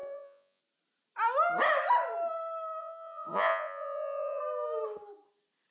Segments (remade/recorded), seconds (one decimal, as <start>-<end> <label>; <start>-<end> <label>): 0.0-0.6 remade; 0.6-2.8 recorded; 2.8-4.4 remade; 4.4-5.7 recorded